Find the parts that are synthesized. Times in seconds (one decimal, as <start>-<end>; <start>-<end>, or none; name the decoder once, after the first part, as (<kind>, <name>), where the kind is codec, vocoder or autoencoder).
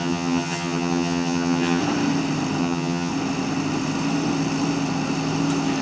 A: 0.0-1.8 (vocoder, HiFi-GAN); 2.6-3.1